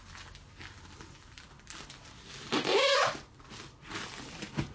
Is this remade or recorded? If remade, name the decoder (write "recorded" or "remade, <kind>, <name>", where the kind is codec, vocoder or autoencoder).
recorded